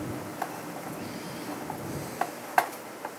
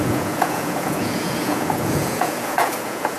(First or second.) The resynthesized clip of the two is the second